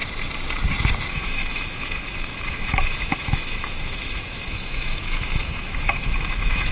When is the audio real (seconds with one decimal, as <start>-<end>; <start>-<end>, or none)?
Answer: 0.0-1.1